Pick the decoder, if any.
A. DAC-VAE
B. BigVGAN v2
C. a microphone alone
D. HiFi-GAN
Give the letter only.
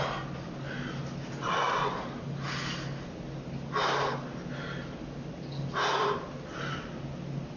C